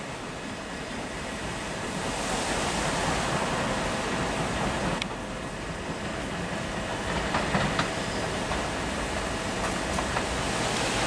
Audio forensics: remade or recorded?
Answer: recorded